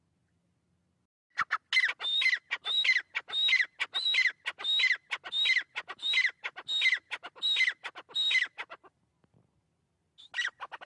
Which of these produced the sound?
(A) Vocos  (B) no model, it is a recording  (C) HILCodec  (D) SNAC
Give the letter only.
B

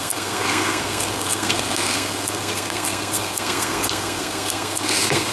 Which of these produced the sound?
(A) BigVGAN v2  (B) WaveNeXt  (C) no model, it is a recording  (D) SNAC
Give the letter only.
D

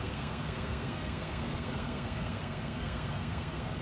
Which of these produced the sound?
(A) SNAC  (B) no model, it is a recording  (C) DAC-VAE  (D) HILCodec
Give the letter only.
A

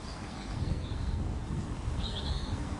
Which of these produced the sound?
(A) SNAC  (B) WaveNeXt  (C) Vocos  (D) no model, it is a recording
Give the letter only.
A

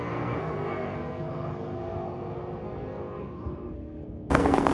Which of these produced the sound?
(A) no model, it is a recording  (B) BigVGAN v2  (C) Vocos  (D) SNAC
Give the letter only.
D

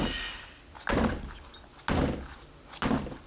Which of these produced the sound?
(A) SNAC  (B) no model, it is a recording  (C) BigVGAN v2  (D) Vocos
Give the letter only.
B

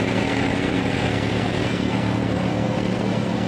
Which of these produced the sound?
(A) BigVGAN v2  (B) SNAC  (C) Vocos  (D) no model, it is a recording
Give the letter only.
B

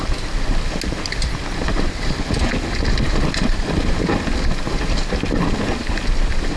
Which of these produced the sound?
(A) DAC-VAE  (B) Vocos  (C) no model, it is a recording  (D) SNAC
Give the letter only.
C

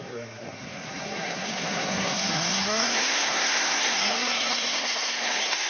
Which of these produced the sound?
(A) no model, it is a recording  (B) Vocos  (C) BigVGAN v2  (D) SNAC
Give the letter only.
D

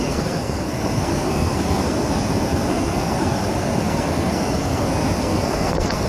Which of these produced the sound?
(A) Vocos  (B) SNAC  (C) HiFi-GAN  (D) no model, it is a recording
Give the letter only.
B